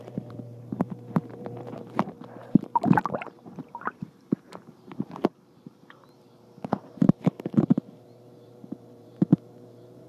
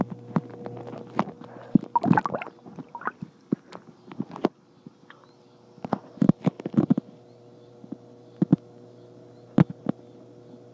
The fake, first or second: first